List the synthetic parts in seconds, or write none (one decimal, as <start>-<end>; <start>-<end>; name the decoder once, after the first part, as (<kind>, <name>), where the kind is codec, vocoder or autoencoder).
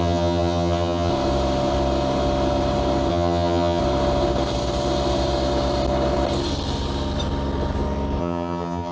0.0-1.1 (vocoder, HiFi-GAN); 3.1-3.8; 8.2-8.9